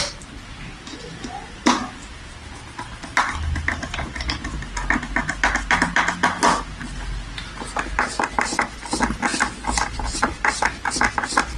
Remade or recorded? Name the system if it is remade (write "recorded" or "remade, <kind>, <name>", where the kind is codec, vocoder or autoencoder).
recorded